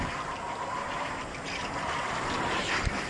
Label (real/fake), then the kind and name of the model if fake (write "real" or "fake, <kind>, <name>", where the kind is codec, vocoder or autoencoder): real